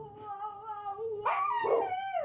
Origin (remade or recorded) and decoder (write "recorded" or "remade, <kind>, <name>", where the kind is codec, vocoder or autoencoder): recorded